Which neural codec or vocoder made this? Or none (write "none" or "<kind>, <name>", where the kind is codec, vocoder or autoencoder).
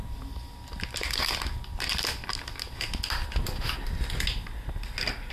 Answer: none